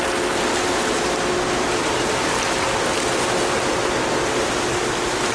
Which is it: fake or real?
real